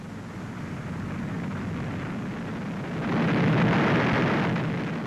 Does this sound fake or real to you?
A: real